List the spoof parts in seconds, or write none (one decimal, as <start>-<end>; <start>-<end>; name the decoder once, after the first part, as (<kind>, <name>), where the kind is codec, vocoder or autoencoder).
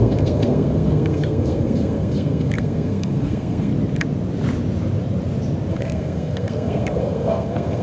0.0-3.7 (codec, SNAC); 5.7-7.8